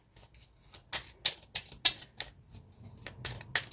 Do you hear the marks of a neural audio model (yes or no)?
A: no